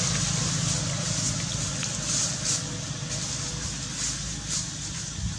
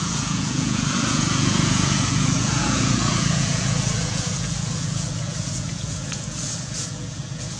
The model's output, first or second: second